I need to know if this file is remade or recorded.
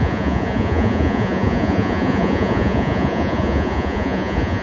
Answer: remade